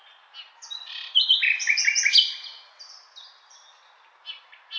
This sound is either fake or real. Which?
real